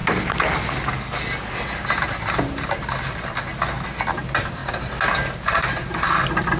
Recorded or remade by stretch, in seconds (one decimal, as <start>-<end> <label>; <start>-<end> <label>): 0.0-6.6 recorded